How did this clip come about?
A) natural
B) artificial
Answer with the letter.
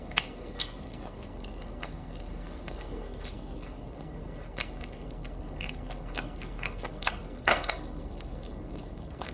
B